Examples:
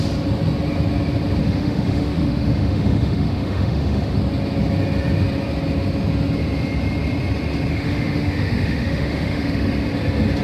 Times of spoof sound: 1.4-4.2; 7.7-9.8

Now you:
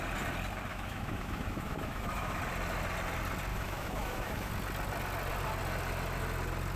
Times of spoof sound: 0.7-2.4; 3.5-4.5

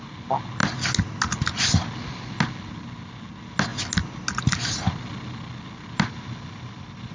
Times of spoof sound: none